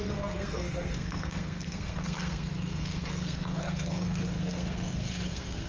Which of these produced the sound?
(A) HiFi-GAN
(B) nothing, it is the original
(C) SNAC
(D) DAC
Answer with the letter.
C